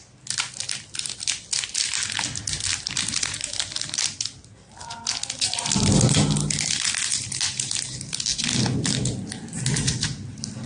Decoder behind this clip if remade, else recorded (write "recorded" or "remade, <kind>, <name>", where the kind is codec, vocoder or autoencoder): recorded